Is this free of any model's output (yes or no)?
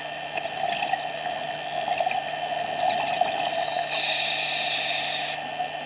yes